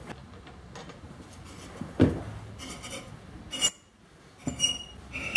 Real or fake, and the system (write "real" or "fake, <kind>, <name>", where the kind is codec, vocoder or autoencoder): real